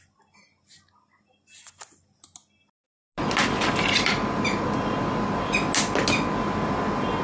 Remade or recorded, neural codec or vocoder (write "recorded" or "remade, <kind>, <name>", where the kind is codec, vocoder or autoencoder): recorded